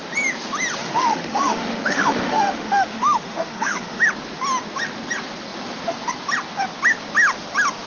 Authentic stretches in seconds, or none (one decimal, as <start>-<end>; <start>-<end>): 0.0-0.8; 4.0-7.9